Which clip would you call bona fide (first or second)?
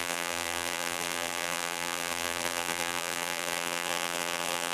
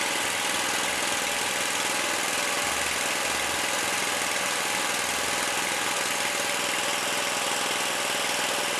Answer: second